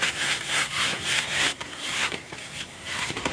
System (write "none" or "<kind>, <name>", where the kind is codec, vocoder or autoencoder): codec, SNAC